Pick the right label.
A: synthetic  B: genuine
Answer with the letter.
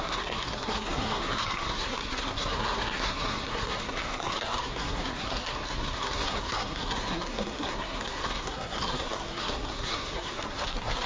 A